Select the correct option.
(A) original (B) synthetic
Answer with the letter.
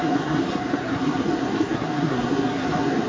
B